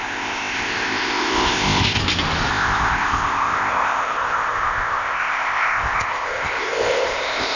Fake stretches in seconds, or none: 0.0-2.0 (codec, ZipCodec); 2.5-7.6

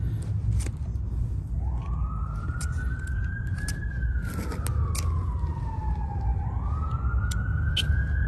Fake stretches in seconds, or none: none

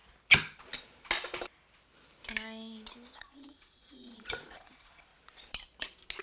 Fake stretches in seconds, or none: 3.2-5.1 (vocoder, Vocos)